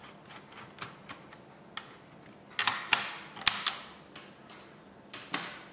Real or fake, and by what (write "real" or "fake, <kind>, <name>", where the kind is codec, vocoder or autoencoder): real